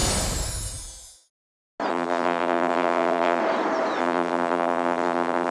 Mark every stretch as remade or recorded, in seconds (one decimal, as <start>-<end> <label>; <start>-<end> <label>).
0.0-1.9 recorded; 1.9-3.4 remade; 3.4-4.0 recorded; 4.0-5.5 remade